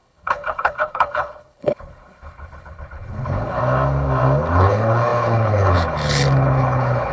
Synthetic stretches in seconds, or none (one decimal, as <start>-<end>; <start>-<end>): 0.0-3.6; 4.5-7.1